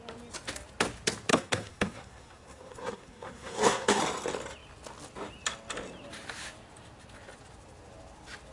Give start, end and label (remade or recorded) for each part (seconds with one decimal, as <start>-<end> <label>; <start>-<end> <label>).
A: 0.0-1.3 recorded; 1.3-4.0 remade; 4.0-8.5 recorded